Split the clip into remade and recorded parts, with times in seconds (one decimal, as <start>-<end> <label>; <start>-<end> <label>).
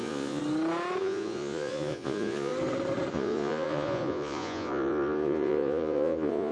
0.0-0.4 remade; 0.4-1.0 recorded; 1.0-2.5 remade; 2.5-3.1 recorded; 3.1-6.5 remade